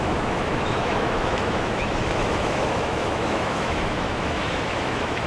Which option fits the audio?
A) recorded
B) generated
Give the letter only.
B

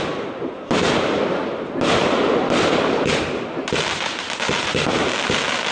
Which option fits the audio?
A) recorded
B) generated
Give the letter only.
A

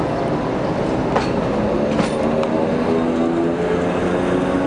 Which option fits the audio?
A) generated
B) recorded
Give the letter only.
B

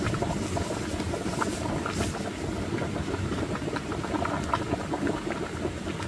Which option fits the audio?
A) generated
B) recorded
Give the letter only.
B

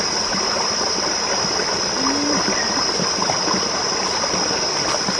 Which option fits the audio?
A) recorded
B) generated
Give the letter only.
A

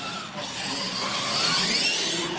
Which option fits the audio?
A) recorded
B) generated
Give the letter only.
A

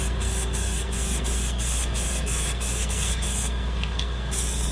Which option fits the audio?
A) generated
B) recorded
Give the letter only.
A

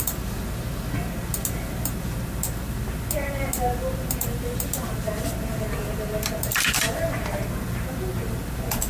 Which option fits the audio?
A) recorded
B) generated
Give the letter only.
A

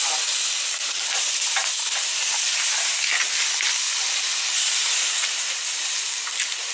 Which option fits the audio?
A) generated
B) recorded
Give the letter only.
B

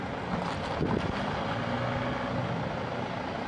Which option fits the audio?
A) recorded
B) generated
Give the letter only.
A